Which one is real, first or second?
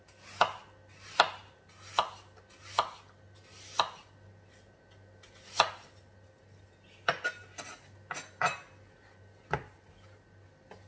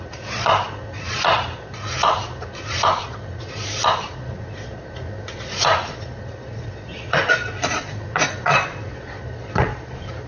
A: first